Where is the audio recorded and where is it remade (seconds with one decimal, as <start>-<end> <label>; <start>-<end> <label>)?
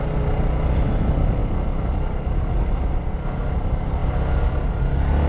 0.0-5.3 recorded